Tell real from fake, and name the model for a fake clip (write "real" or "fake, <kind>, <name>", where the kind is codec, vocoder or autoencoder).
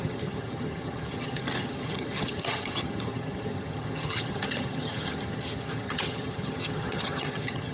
fake, vocoder, HiFi-GAN